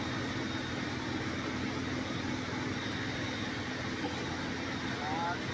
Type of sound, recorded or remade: recorded